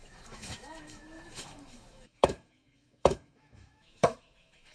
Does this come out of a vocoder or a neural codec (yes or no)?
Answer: yes